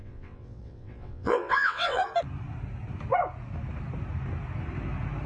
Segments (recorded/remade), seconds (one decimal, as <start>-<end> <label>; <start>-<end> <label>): 0.0-2.0 remade; 2.0-5.3 recorded